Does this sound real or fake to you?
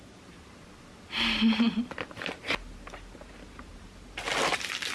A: real